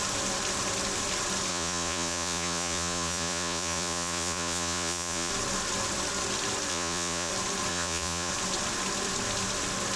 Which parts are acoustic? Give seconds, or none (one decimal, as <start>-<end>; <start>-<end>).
0.0-1.5; 5.3-6.7; 7.3-7.7; 8.3-10.0